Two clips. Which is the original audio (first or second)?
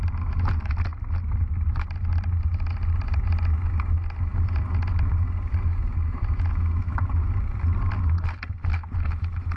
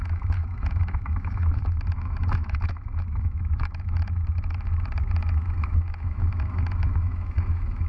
first